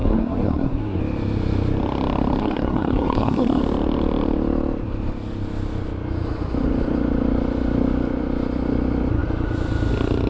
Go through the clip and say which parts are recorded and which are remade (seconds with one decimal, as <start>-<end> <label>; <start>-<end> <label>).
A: 0.0-1.0 remade; 1.0-2.4 recorded; 2.4-3.6 remade; 3.6-10.3 recorded

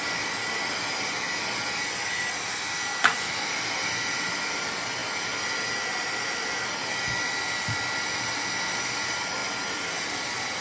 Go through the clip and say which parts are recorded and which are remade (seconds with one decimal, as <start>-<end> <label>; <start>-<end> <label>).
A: 0.0-10.6 recorded

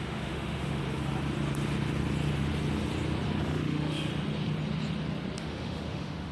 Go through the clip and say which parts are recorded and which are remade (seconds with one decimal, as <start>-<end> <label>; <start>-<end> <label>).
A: 0.0-0.8 remade; 0.8-3.4 recorded; 3.4-4.1 remade; 4.1-5.4 recorded; 5.4-6.3 remade

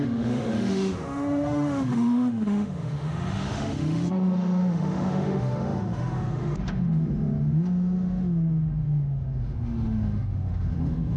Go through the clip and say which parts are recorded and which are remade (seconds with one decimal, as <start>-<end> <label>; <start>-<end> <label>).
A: 0.0-11.2 remade

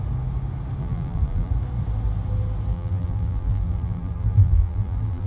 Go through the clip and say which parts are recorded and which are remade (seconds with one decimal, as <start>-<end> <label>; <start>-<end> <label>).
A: 0.0-0.8 recorded; 0.8-1.5 remade; 1.5-2.7 recorded; 2.7-5.3 remade